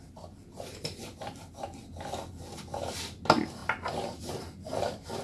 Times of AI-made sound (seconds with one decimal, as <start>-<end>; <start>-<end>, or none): none